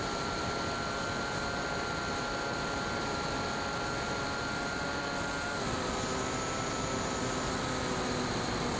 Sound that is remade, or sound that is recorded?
recorded